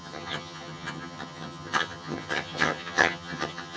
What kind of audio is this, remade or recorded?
remade